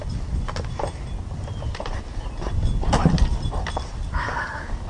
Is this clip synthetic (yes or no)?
no